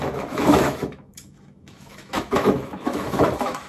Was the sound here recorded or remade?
remade